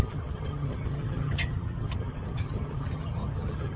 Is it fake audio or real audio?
fake